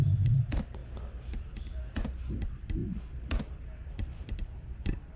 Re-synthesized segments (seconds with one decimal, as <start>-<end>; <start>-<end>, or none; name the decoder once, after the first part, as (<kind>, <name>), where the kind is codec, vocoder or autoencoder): 0.0-0.8 (vocoder, BigVGAN v2); 1.4-2.8; 3.6-5.2